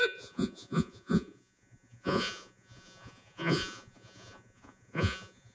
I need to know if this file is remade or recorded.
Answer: remade